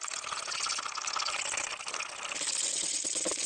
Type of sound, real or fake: real